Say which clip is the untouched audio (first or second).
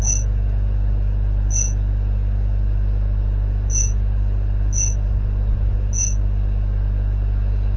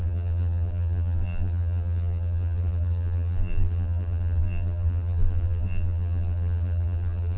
first